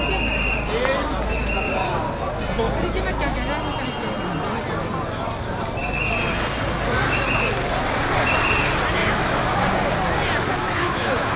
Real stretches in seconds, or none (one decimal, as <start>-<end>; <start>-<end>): 0.0-9.0; 9.5-10.6